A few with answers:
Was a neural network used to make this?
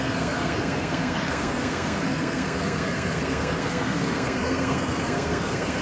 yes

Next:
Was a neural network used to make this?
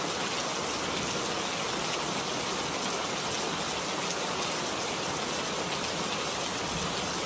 no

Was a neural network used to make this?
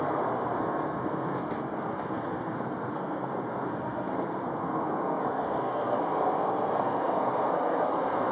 yes